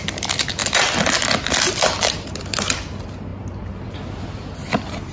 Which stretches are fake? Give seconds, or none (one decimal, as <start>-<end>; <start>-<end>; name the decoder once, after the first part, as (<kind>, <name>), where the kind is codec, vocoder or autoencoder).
none